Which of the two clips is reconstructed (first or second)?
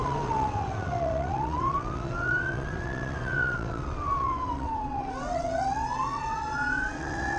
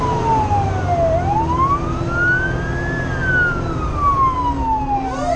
first